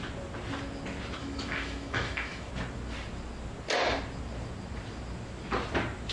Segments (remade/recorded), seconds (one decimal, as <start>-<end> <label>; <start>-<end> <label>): 0.0-1.2 recorded; 1.2-2.5 remade; 2.5-6.1 recorded